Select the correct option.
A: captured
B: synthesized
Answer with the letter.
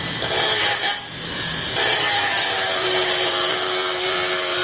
B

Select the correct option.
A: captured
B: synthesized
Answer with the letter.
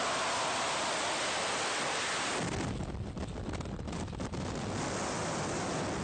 A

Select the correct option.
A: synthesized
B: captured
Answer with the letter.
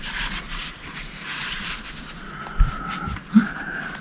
B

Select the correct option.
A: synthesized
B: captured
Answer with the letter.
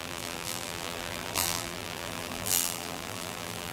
A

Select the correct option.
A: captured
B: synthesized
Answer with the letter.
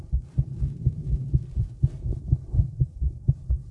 B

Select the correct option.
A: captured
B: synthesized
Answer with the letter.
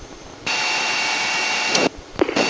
B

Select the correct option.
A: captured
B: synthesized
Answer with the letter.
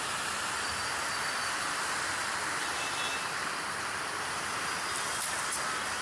A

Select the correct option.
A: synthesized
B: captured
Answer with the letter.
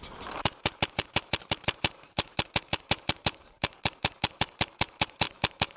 A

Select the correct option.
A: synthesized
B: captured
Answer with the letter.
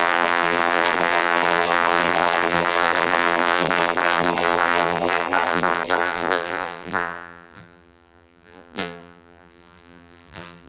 A